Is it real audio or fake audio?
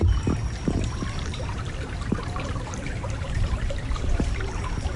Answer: fake